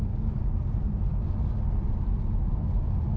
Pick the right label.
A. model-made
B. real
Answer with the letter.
B